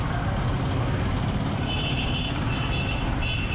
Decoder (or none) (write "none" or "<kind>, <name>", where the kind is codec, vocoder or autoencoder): none